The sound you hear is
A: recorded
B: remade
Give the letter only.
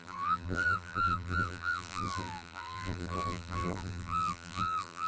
B